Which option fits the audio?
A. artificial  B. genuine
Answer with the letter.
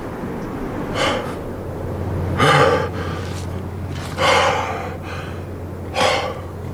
B